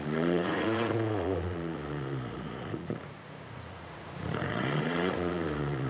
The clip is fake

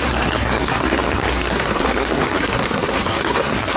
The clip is fake